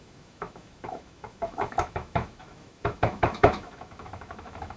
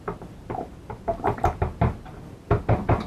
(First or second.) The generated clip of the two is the first